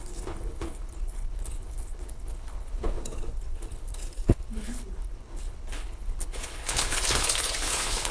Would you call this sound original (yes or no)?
no